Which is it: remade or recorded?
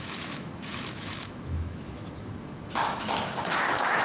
remade